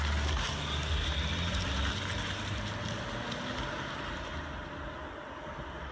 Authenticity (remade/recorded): recorded